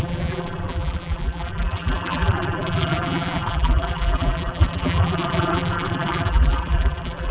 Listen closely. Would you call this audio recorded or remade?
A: remade